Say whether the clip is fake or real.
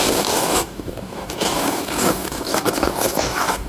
fake